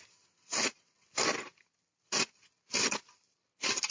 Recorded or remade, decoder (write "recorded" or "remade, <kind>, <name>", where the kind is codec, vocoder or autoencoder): recorded